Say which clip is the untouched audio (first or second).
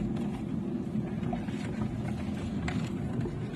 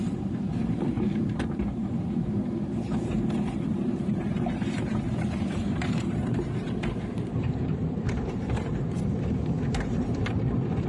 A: first